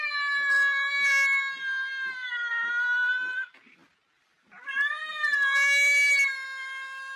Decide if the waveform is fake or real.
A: real